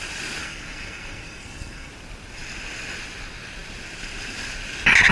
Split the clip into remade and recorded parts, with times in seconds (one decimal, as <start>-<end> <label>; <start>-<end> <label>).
0.0-0.4 recorded; 0.4-1.9 remade; 1.9-5.1 recorded